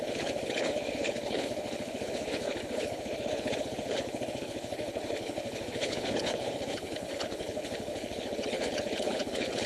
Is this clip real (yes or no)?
no